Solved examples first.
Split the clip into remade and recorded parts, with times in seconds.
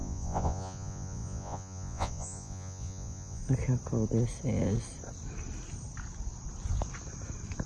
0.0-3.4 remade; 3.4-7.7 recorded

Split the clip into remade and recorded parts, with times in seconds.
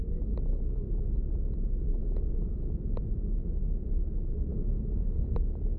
0.0-2.0 recorded; 2.0-2.7 remade; 2.7-4.5 recorded; 4.5-5.3 remade; 5.3-5.8 recorded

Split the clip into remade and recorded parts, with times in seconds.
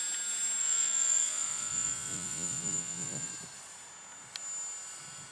0.0-0.6 recorded; 0.6-3.3 remade; 3.3-5.3 recorded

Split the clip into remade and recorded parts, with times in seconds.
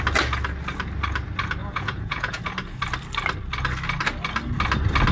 0.0-1.6 recorded; 1.6-2.4 remade; 2.4-5.1 recorded